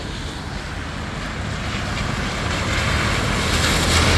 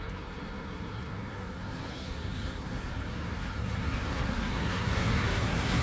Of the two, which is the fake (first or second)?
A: second